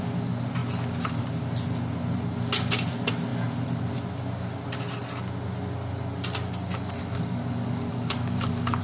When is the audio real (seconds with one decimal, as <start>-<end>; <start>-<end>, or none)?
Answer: 0.0-7.0